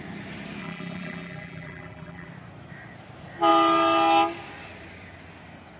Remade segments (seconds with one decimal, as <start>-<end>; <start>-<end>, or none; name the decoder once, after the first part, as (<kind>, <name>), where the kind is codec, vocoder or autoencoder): 0.6-2.3 (vocoder, BigVGAN v2)